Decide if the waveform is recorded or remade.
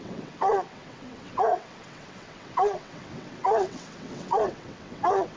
remade